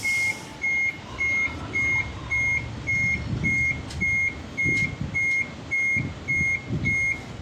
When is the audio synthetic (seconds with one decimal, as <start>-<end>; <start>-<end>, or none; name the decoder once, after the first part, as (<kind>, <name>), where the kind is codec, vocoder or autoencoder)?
none